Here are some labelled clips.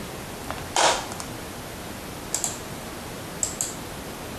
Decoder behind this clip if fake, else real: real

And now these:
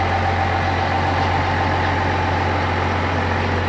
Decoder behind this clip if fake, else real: real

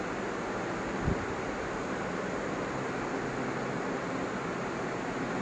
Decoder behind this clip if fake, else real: real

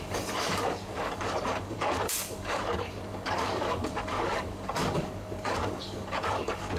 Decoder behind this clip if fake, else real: fake, codec, DAC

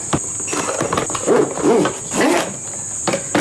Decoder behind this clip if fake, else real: real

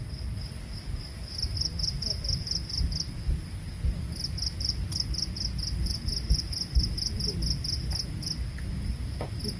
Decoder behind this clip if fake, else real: real